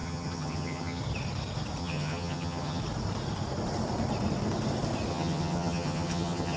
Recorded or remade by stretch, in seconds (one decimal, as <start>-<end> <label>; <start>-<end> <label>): 0.0-1.0 remade; 1.0-1.8 recorded; 1.8-2.8 remade; 2.8-5.1 recorded; 5.1-6.6 remade